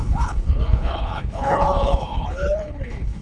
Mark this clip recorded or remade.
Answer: remade